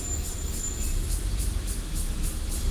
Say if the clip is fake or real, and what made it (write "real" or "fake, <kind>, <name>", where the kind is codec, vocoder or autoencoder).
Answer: fake, autoencoder, DAC-VAE